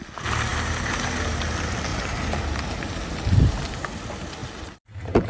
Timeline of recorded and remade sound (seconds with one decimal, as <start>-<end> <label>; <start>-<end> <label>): 0.0-0.5 recorded; 0.5-1.3 remade; 1.3-1.9 recorded; 1.9-3.9 remade; 3.9-4.4 recorded; 4.4-5.3 remade